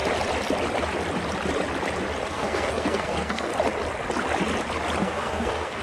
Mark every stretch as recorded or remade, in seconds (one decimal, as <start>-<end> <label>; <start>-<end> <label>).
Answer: 0.0-2.3 recorded; 2.3-3.5 remade; 3.5-5.0 recorded; 5.0-5.8 remade